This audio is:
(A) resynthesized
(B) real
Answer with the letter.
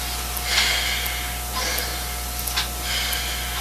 B